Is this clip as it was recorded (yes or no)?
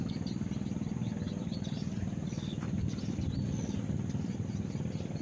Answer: yes